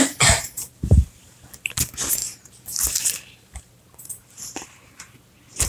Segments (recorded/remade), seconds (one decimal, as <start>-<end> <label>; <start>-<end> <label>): 0.0-0.4 recorded; 0.4-1.6 remade; 1.6-2.2 recorded; 2.2-5.2 remade; 5.2-5.7 recorded